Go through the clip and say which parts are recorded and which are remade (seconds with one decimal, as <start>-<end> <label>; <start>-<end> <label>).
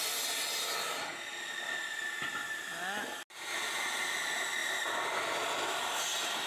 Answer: 0.0-4.6 recorded; 4.6-6.5 remade